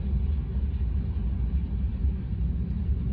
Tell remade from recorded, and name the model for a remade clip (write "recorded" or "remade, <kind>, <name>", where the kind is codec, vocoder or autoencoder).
recorded